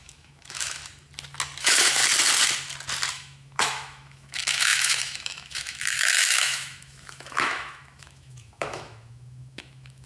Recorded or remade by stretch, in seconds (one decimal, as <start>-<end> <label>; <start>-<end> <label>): 0.0-0.8 remade; 0.8-1.6 recorded; 1.6-2.0 remade; 2.0-3.1 recorded; 3.1-10.1 remade